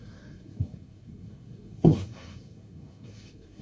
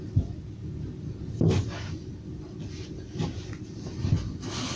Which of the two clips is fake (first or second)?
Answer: first